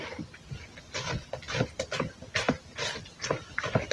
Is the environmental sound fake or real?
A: real